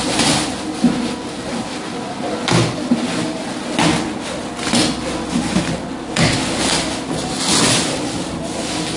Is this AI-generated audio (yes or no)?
no